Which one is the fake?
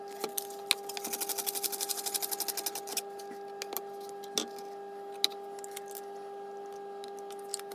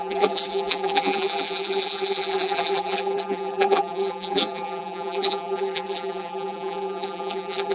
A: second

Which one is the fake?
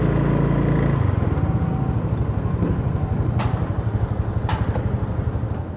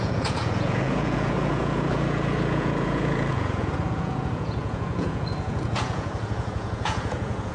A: second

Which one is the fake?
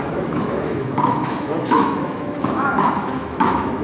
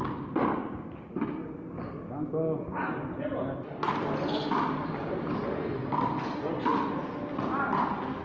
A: first